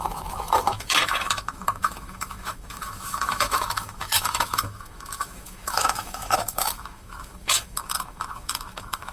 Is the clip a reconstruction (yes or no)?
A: yes